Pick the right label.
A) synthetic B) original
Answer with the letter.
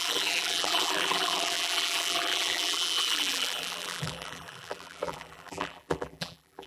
A